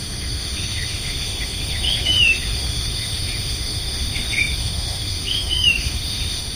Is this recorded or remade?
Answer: remade